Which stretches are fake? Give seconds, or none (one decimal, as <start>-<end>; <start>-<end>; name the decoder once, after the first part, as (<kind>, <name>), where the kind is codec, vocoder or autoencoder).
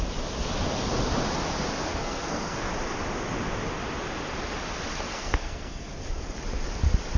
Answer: 1.9-2.7 (codec, SNAC); 5.1-5.9